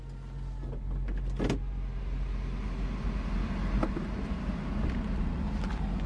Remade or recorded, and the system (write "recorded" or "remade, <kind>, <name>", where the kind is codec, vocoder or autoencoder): recorded